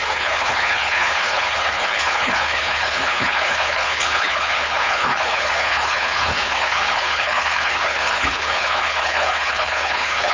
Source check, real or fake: fake